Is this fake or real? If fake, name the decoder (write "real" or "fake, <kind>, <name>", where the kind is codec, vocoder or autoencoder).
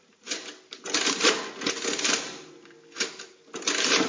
real